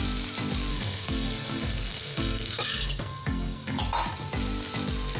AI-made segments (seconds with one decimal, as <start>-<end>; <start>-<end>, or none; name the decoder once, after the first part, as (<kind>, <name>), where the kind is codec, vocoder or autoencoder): 0.7-3.8 (codec, SNAC)